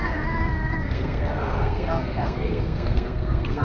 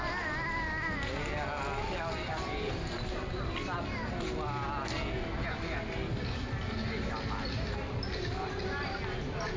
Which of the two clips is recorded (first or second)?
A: second